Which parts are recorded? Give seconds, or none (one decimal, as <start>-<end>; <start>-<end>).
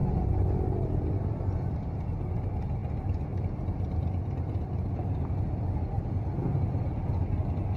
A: 0.0-7.8